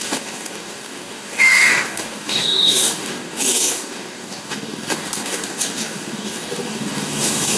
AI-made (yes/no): yes